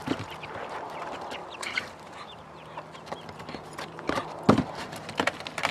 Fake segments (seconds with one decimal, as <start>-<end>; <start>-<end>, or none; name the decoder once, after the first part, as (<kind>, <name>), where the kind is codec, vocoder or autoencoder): 0.0-5.7 (vocoder, BigVGAN v2)